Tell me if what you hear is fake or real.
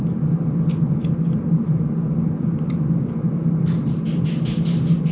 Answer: real